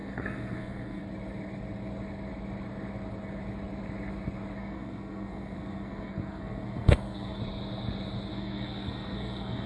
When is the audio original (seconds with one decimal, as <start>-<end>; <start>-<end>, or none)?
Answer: 1.0-4.6; 7.4-8.3